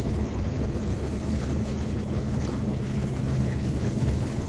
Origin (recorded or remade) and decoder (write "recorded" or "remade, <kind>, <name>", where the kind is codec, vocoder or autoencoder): remade, codec, HILCodec